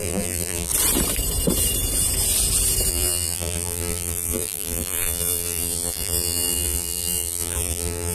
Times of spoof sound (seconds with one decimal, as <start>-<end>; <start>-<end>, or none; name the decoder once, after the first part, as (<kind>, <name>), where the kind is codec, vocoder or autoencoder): 0.0-0.7 (vocoder, BigVGAN v2); 2.9-8.1